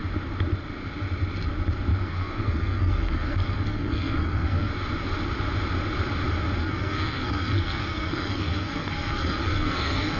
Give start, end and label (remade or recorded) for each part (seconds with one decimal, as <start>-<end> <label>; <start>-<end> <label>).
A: 0.0-1.9 recorded; 1.9-4.7 remade; 4.7-6.6 recorded; 6.6-10.2 remade